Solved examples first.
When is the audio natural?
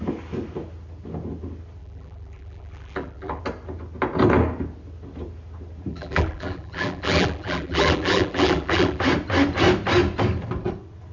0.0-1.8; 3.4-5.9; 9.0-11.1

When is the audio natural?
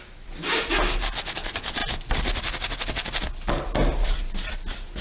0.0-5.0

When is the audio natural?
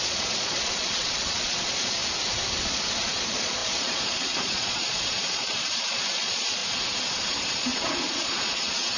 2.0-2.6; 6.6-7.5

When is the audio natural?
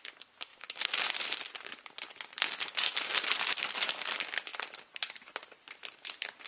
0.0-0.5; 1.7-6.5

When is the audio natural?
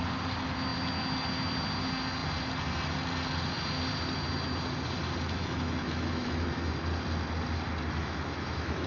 0.0-5.4; 6.7-8.0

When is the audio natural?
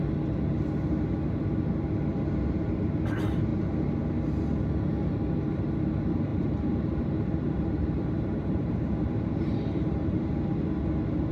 0.0-6.3; 10.3-11.3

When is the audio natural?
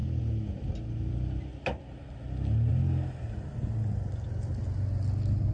0.0-5.5